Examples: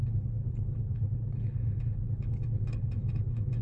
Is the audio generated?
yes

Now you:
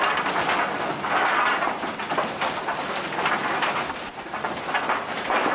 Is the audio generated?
no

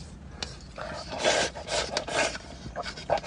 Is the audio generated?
no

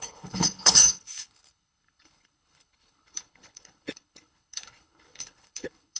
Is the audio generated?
yes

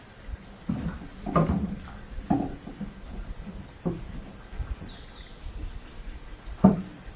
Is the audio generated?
no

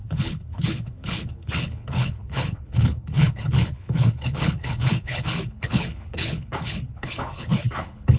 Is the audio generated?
yes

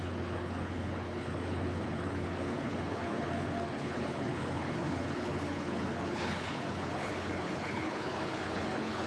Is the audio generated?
yes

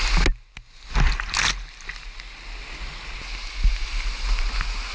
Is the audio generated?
no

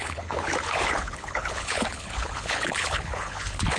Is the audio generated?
yes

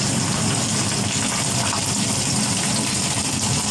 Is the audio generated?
no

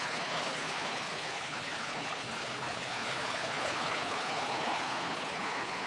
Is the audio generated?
yes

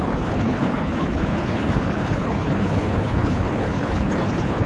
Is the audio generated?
yes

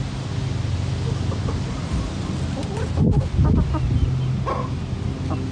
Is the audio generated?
no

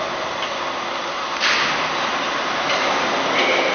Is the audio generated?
no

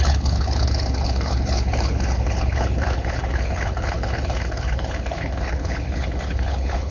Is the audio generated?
yes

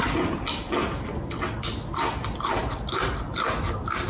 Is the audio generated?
no